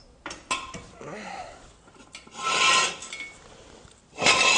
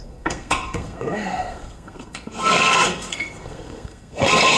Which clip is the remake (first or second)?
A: second